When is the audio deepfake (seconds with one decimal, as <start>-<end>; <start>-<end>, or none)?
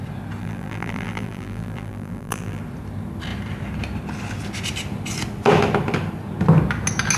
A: 0.4-2.6